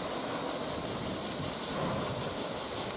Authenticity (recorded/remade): recorded